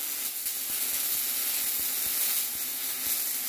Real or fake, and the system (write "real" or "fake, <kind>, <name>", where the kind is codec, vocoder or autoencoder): real